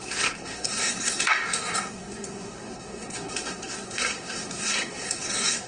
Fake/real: fake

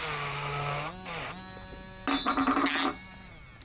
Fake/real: real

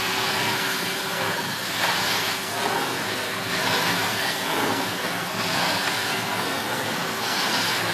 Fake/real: fake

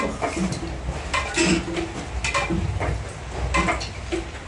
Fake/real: real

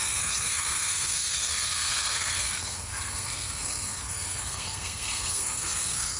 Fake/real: fake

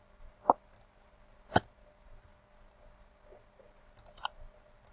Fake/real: real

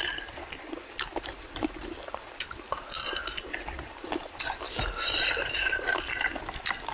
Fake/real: real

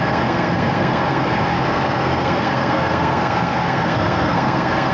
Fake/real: fake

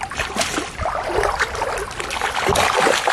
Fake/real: real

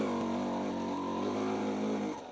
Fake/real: real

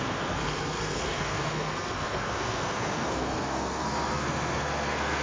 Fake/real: fake